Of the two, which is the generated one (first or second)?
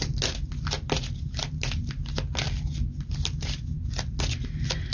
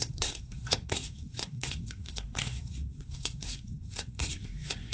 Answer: second